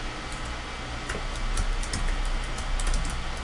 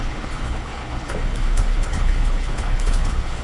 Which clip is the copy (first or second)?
second